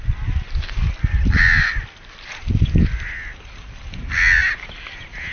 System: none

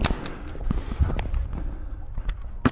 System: none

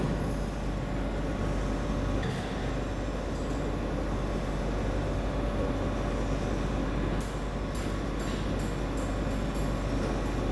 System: none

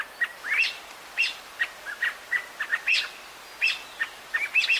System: none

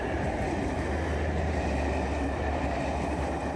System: vocoder, BigVGAN v2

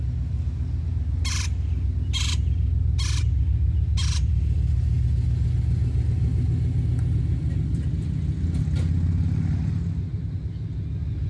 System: none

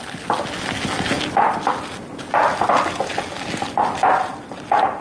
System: none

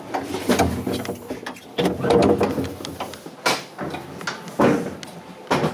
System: none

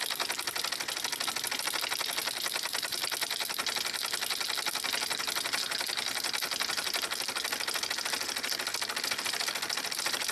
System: none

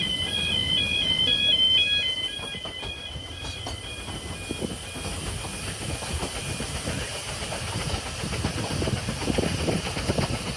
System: none